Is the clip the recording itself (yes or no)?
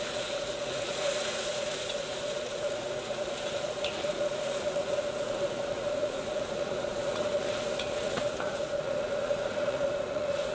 no